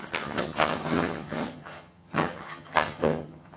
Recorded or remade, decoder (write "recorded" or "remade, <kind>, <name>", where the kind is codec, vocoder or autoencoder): remade, vocoder, HiFi-GAN